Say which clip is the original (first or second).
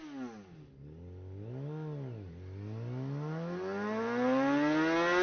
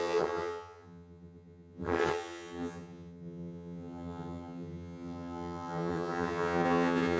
first